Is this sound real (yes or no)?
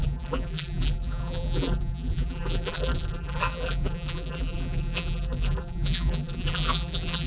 no